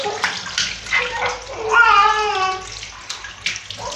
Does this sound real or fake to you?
real